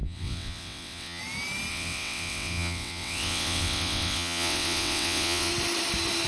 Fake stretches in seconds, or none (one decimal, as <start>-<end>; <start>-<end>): 0.0-1.2; 1.7-5.5